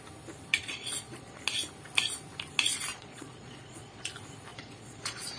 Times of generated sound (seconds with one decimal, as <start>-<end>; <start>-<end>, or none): 0.5-1.4; 2.9-4.1; 4.5-5.4